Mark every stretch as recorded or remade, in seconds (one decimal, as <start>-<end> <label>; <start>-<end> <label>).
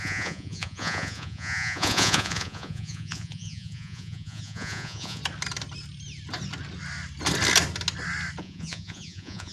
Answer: 0.0-5.2 remade; 5.2-8.4 recorded; 8.4-9.5 remade